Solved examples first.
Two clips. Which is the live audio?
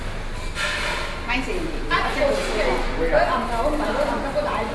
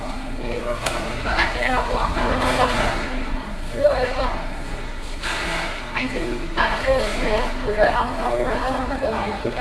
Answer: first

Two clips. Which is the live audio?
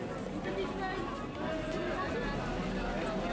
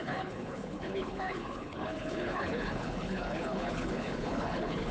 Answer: first